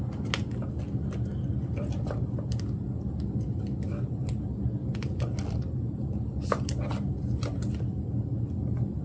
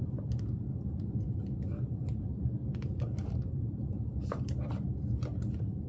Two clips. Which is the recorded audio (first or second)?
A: first